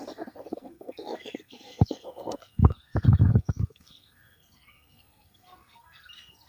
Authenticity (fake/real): fake